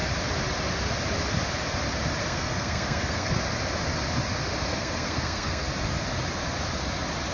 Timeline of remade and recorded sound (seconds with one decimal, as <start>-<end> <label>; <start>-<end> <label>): 0.0-2.2 recorded; 2.2-3.3 remade; 3.3-4.7 recorded; 4.7-5.7 remade; 5.7-7.3 recorded